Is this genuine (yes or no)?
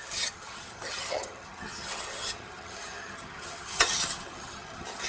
no